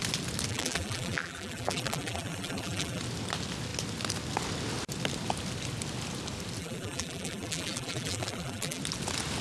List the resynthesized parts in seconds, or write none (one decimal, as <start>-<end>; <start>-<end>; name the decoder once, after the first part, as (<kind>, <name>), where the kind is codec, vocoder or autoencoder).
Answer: 0.5-3.0 (vocoder, BigVGAN v2); 6.6-8.8